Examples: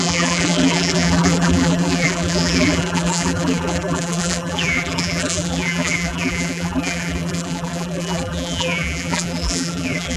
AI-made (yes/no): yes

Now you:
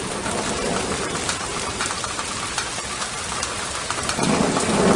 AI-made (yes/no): no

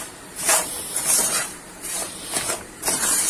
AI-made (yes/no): yes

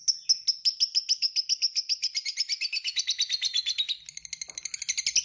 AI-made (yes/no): no